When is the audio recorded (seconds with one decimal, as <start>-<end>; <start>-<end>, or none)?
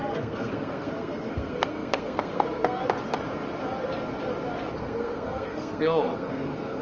2.8-4.7